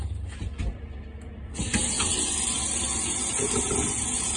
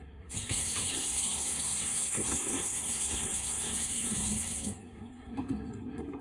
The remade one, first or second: second